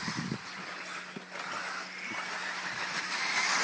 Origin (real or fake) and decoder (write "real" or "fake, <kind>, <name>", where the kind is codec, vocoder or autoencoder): real